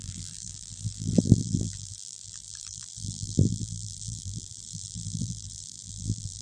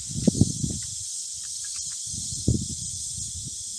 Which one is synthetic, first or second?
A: first